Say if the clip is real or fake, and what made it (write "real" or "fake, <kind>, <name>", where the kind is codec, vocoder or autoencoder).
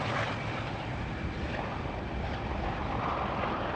real